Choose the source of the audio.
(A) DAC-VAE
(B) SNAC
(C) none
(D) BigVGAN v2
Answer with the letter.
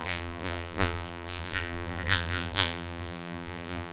D